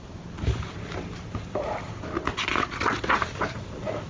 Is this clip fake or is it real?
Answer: real